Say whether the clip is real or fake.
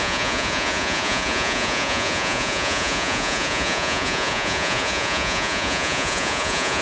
fake